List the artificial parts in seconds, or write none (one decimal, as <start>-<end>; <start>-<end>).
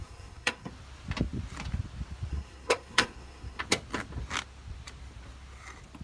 0.0-0.7; 2.3-3.6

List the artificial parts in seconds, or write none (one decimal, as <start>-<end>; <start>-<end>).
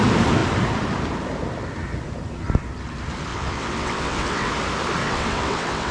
3.3-4.5; 5.0-5.9